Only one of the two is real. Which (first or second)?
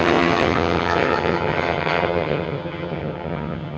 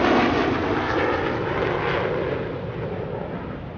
second